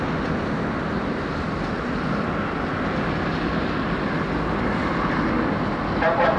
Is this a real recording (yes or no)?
yes